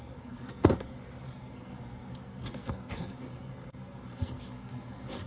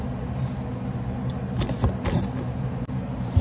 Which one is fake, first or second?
first